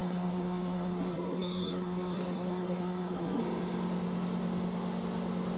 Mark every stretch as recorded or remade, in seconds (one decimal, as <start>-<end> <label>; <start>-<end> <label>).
0.0-3.4 remade; 3.4-5.6 recorded